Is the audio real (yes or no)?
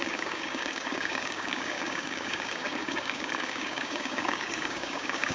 no